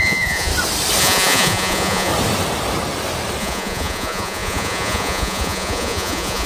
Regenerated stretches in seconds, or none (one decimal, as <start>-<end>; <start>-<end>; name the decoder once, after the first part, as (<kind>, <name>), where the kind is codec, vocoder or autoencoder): 0.0-0.5 (vocoder, Vocos); 1.0-2.1; 3.4-6.5